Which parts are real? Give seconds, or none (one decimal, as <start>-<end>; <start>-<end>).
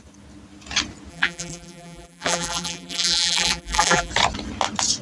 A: 0.0-1.1; 4.1-5.0